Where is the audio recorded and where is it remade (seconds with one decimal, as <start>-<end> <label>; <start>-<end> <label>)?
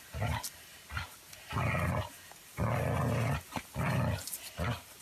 0.0-5.0 recorded